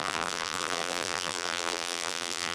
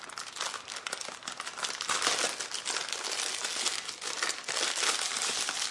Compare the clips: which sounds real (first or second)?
second